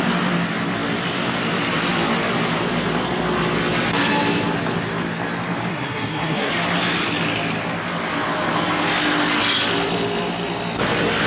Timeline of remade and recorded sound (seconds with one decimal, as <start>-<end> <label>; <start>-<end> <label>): 0.0-5.7 recorded; 5.7-6.5 remade; 6.5-11.3 recorded

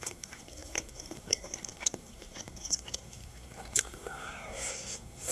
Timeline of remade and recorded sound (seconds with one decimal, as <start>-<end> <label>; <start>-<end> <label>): 0.0-5.3 remade

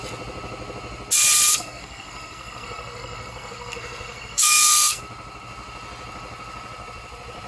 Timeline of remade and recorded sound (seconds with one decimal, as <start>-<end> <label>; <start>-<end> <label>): 0.0-1.5 recorded; 1.5-5.0 remade; 5.0-7.5 recorded

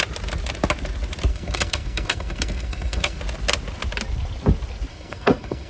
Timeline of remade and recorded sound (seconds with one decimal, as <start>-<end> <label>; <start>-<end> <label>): 0.0-1.3 recorded; 1.3-3.2 remade; 3.2-4.9 recorded; 4.9-5.7 remade

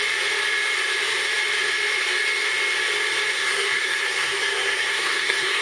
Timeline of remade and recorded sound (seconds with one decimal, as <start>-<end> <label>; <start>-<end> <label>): 0.0-3.3 recorded; 3.3-5.6 remade

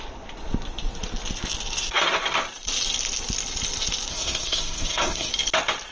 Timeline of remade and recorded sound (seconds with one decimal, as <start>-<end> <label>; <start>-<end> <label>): 0.0-4.1 recorded; 4.1-5.3 remade; 5.3-5.9 recorded

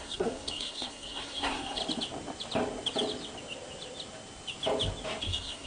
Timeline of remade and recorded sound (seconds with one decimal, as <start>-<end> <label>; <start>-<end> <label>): 0.0-1.8 remade; 1.8-5.2 recorded; 5.2-5.7 remade